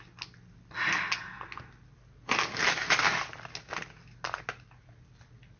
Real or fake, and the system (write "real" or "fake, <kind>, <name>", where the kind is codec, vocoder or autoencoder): real